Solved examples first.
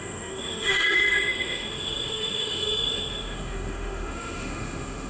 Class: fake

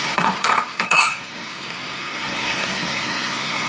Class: fake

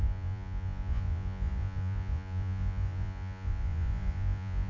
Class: fake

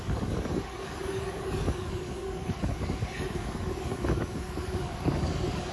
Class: fake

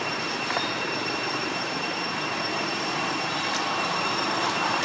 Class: fake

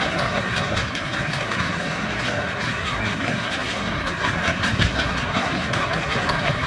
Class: fake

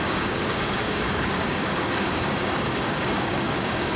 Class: fake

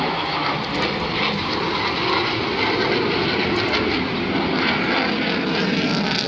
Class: real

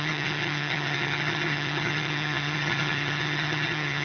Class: fake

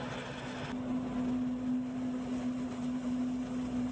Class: real